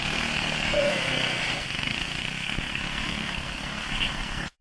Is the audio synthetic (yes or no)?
yes